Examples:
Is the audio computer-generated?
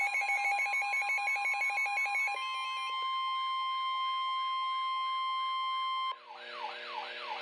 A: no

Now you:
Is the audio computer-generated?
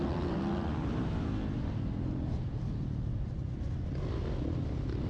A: no